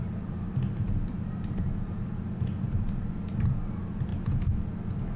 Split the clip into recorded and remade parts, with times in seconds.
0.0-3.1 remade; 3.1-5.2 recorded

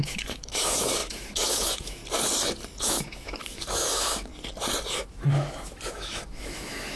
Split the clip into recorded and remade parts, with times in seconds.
0.0-2.0 remade; 2.0-2.8 recorded; 2.8-4.3 remade; 4.3-4.9 recorded; 4.9-7.0 remade

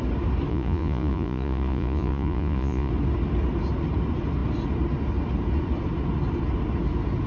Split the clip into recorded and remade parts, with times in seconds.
0.0-0.5 recorded; 0.5-2.9 remade; 2.9-7.3 recorded

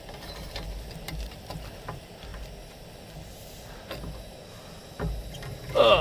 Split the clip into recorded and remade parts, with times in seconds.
0.0-2.3 remade; 2.3-6.0 recorded

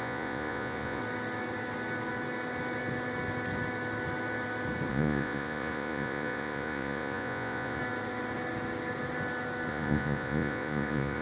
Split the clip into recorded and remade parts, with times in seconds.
0.0-1.0 remade; 1.0-4.9 recorded; 4.9-7.8 remade; 7.8-9.7 recorded; 9.7-11.2 remade

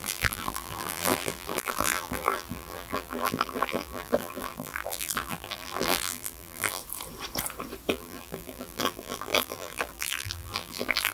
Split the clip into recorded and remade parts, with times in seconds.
0.0-6.8 remade; 6.8-7.9 recorded; 7.9-11.1 remade

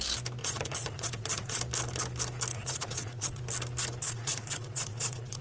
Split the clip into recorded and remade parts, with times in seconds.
0.0-0.4 recorded; 0.4-1.6 remade; 1.6-2.5 recorded; 2.5-3.4 remade; 3.4-4.0 recorded; 4.0-5.4 remade